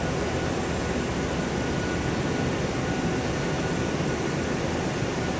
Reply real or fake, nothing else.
real